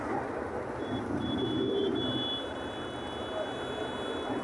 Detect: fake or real real